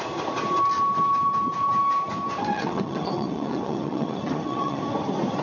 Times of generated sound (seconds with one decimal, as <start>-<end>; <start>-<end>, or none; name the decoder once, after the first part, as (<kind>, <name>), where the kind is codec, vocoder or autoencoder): 2.5-4.8 (vocoder, WaveNeXt)